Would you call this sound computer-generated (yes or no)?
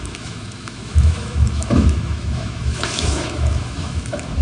yes